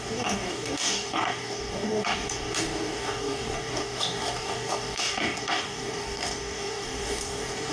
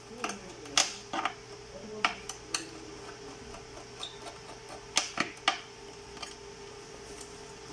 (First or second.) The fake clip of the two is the first